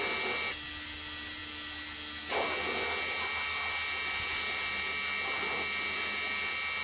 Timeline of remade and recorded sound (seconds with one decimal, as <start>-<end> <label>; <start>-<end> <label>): 0.0-6.8 recorded